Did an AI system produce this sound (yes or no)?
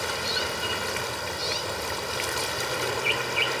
no